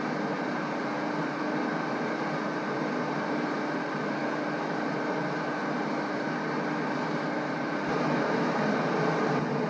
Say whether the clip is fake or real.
real